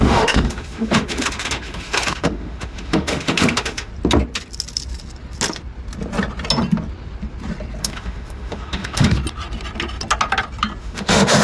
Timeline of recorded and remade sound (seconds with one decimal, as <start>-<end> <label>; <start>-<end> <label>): 0.0-3.9 remade; 3.9-7.8 recorded; 7.8-9.2 remade; 9.2-10.8 recorded; 10.8-11.4 remade